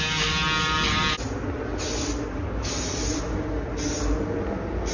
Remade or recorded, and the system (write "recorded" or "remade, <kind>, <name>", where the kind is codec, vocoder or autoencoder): recorded